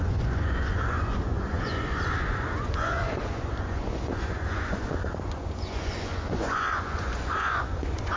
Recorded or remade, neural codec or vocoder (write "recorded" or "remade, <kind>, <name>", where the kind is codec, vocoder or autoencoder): remade, vocoder, Vocos